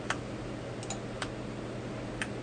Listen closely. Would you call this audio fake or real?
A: real